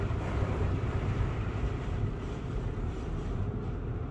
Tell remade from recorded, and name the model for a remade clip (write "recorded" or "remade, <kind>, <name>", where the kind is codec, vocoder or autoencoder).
remade, vocoder, BigVGAN v2